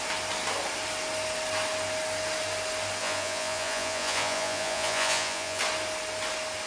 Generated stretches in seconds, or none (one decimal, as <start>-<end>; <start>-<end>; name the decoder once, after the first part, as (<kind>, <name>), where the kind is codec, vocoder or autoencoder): 3.0-5.6 (vocoder, Vocos)